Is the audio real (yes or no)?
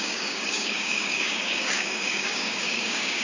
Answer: no